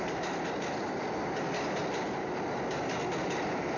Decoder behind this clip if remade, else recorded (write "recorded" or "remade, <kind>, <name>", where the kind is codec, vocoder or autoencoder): recorded